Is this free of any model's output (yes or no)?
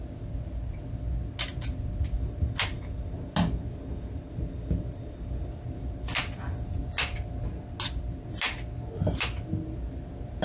yes